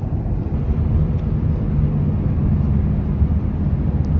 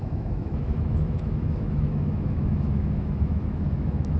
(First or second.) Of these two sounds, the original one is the first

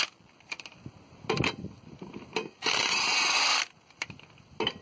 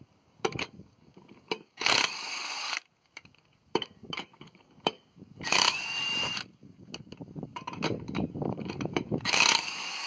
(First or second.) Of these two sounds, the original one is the first